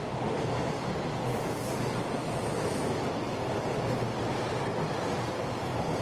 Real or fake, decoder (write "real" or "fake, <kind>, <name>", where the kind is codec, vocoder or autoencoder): real